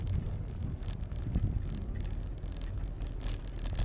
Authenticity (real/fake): real